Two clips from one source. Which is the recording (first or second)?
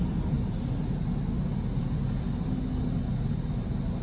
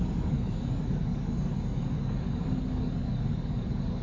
first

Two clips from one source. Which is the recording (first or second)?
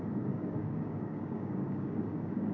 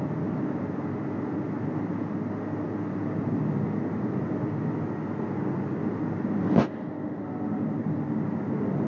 second